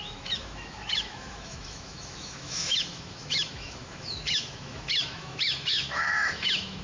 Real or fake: fake